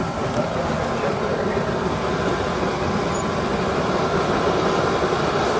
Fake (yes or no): yes